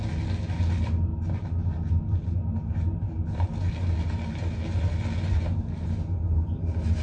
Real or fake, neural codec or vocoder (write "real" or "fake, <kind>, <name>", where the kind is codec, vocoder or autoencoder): real